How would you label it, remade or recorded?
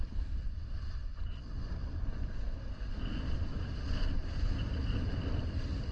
recorded